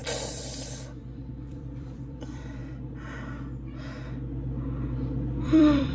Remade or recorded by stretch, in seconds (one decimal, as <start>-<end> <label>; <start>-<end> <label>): 0.0-2.6 remade; 2.6-5.4 recorded; 5.4-5.9 remade